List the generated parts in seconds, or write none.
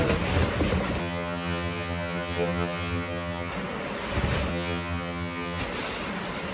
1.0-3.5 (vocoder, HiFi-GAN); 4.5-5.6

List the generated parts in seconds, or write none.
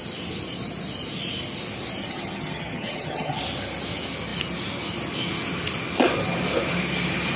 2.0-3.4 (vocoder, HiFi-GAN)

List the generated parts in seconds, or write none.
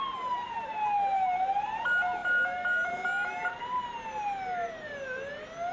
none